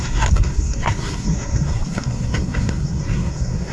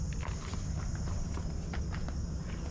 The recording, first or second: second